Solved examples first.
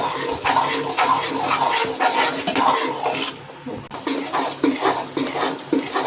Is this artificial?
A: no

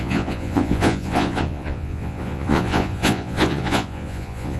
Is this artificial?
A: yes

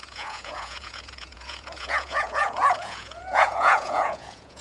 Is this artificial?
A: yes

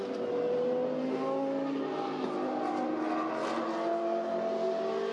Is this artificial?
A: no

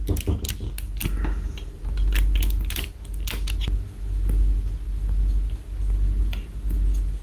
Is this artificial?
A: no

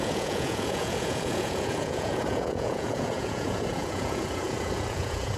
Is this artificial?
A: yes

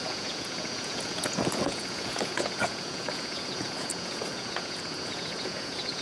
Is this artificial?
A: yes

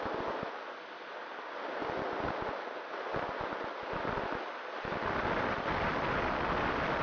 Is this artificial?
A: no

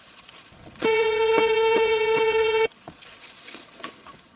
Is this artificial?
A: yes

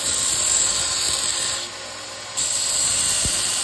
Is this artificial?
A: no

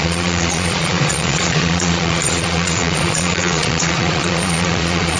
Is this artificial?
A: yes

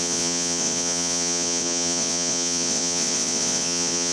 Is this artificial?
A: yes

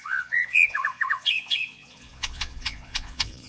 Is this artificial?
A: yes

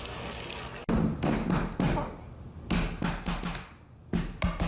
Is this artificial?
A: no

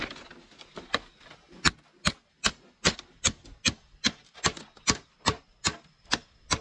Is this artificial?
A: no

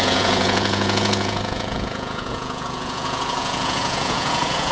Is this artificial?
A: yes